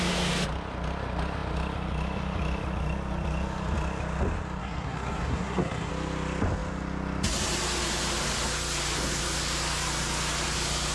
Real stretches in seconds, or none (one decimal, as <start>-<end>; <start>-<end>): 0.0-4.6; 5.9-10.9